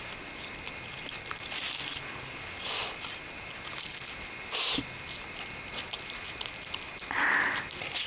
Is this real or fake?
real